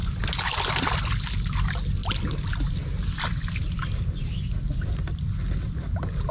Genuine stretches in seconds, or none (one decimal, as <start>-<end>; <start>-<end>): 0.0-6.3